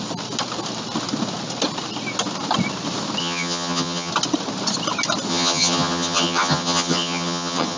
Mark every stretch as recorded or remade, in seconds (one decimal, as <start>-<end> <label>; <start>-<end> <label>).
0.0-3.2 recorded; 3.2-4.1 remade; 4.1-5.3 recorded; 5.3-7.8 remade